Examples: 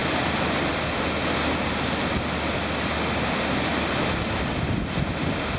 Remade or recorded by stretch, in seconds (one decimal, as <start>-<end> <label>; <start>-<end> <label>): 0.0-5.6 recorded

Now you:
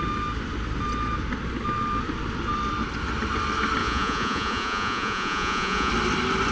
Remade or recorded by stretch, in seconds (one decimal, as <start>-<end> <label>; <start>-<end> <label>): 0.0-3.8 recorded; 3.8-5.9 remade; 5.9-6.5 recorded

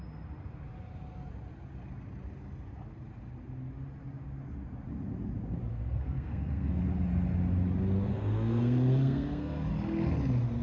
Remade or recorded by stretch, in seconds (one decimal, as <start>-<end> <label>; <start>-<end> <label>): 0.0-5.7 recorded; 5.7-6.8 remade; 6.8-8.1 recorded; 8.1-9.7 remade; 9.7-10.6 recorded

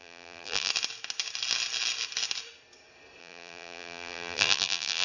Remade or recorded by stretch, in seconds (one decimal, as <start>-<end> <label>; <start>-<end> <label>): 0.0-0.7 remade; 0.7-3.2 recorded; 3.2-5.0 remade